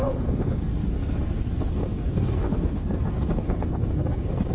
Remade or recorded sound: remade